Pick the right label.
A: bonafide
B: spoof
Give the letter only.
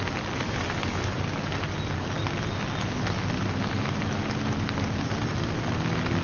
A